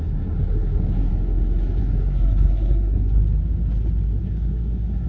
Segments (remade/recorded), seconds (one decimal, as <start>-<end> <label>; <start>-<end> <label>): 0.0-1.1 remade; 1.1-1.8 recorded; 1.8-3.2 remade; 3.2-4.1 recorded; 4.1-5.1 remade